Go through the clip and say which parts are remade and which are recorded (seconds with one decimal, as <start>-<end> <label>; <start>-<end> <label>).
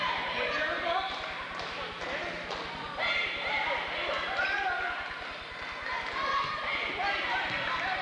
0.0-8.0 recorded